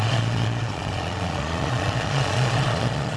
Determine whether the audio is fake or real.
fake